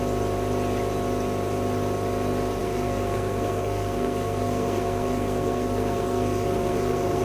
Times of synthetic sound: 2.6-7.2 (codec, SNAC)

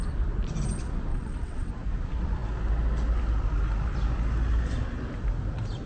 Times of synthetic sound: 1.1-1.7 (vocoder, WaveNeXt)

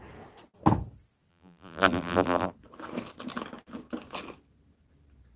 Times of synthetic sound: 1.3-2.5 (vocoder, BigVGAN v2)

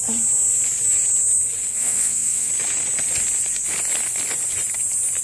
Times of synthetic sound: 1.7-2.5 (vocoder, WaveNeXt)